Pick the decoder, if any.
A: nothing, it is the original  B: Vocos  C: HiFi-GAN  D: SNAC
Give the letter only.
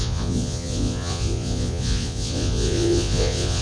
B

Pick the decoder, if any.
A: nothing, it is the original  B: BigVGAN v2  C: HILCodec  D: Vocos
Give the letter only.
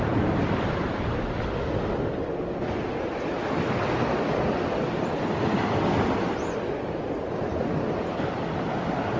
A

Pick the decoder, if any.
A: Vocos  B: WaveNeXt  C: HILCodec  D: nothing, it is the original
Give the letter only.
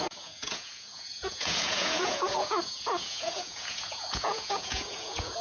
A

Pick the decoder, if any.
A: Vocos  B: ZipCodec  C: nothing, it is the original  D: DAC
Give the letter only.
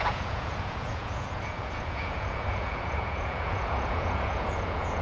A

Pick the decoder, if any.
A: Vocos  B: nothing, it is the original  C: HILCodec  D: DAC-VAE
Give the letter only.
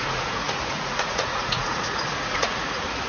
A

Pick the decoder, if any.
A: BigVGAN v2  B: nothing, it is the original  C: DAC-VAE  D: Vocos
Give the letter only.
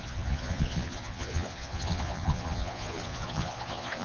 D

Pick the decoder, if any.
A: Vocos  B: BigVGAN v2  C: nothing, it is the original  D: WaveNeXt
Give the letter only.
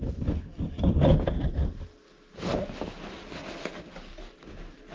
C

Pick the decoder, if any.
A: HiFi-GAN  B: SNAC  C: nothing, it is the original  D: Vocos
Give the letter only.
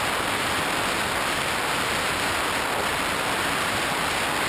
C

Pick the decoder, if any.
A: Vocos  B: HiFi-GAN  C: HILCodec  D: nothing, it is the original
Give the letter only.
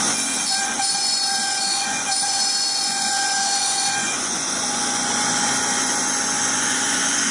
A